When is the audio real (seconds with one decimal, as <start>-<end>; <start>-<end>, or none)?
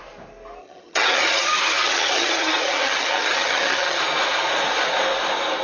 0.0-0.6; 4.0-5.6